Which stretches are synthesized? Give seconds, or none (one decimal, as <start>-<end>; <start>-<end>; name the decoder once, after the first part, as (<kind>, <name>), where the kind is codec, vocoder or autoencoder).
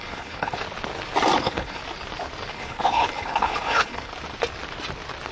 0.0-0.6 (codec, HILCodec); 1.4-1.8; 2.5-4.1